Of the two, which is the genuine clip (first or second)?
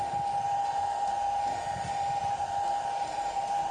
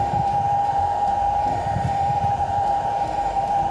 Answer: first